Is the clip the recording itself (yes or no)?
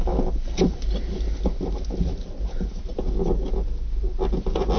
yes